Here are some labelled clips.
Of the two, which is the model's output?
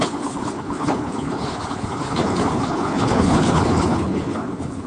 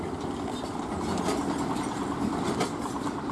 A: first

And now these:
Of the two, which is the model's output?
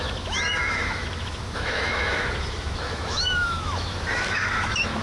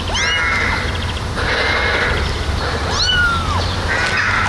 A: first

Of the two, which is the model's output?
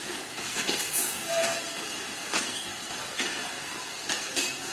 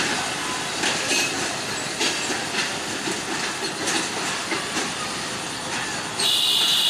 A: first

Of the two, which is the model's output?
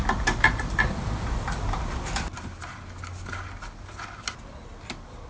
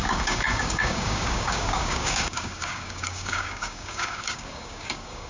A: second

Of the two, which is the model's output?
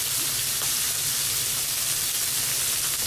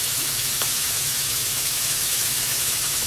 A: second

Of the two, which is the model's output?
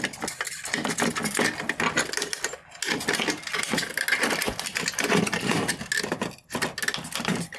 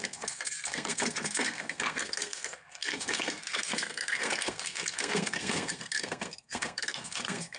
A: second